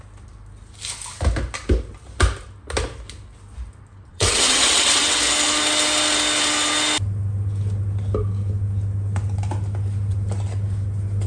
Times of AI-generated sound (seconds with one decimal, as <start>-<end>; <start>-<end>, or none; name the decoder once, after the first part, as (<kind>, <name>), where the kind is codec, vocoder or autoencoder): 4.1-5.2 (vocoder, WaveNeXt)